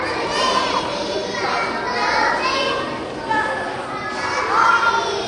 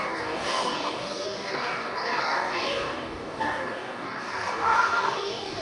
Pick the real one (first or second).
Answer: first